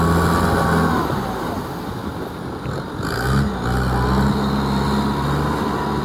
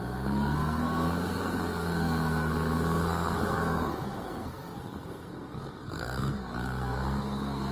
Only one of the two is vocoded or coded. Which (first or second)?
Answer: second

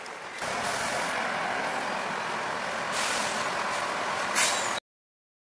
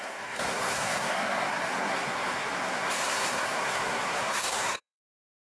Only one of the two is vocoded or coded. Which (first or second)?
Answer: second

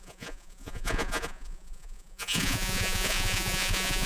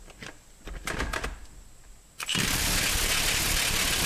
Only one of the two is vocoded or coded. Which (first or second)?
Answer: first